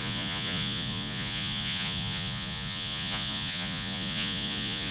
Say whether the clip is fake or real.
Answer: fake